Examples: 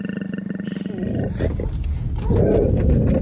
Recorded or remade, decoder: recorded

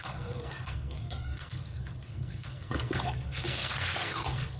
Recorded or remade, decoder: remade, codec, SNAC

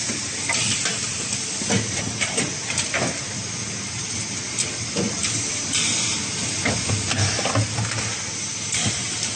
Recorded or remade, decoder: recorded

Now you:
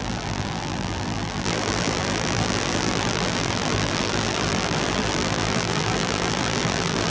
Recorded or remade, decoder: remade, vocoder, BigVGAN v2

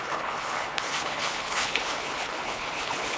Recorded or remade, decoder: remade, codec, HILCodec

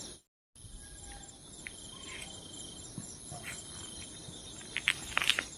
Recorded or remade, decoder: recorded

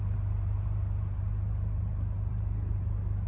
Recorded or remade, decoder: remade, vocoder, BigVGAN v2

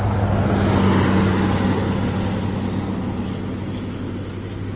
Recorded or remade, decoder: recorded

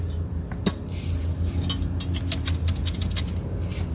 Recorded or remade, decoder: recorded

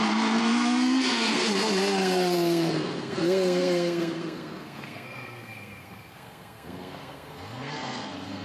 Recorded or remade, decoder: remade, codec, SNAC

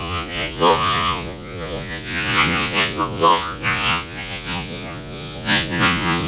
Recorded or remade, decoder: remade, vocoder, Vocos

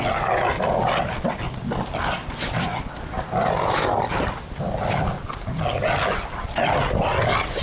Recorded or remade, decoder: recorded